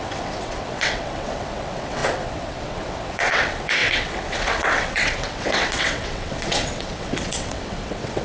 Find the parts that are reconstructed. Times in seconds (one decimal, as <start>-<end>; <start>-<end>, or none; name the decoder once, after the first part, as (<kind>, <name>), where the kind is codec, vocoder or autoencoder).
0.0-8.2 (vocoder, WaveNeXt)